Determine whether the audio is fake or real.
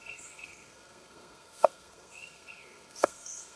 fake